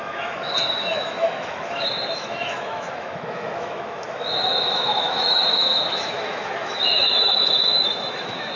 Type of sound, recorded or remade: remade